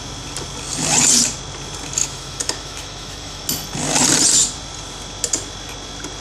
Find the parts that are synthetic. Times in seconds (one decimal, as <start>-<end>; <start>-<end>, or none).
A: 2.0-3.4